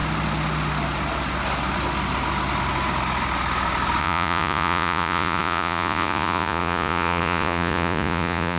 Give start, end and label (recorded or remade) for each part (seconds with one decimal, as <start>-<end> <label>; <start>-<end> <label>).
0.0-4.0 recorded; 4.0-8.6 remade